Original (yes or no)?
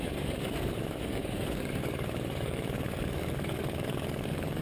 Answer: no